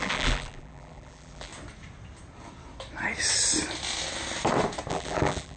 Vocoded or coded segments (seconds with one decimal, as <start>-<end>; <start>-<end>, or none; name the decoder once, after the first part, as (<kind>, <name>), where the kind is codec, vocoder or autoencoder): 0.0-1.5 (vocoder, BigVGAN v2); 4.9-5.6